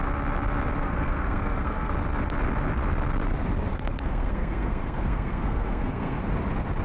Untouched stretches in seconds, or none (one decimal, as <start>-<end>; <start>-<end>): 0.0-0.8; 1.9-3.7; 6.2-6.8